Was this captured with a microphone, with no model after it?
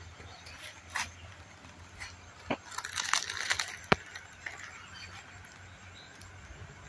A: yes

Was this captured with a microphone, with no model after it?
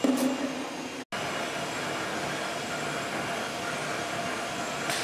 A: yes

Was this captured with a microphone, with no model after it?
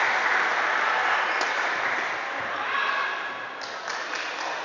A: yes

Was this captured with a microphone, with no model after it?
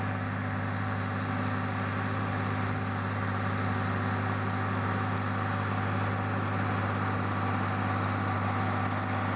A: yes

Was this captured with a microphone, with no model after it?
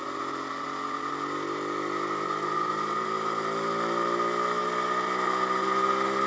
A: yes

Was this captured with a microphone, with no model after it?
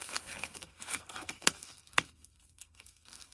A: no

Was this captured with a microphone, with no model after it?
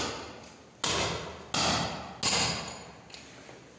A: yes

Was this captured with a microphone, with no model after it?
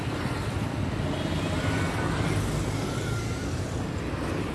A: yes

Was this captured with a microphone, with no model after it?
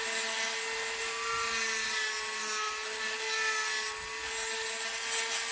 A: yes